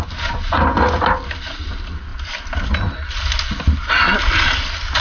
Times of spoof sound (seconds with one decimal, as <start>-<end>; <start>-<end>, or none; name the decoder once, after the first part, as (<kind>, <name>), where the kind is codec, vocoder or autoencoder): none